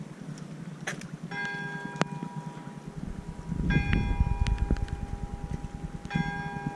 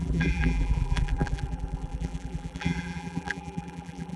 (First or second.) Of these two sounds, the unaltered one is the first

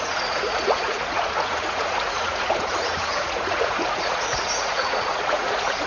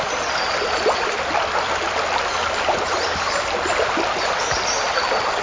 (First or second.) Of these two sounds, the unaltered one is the second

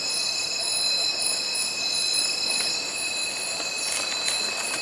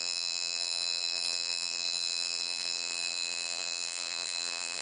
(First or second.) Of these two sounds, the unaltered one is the first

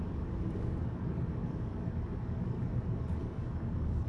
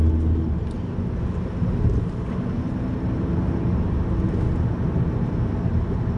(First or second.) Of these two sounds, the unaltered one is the second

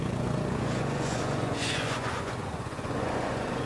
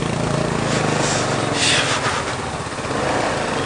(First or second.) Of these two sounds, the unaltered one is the second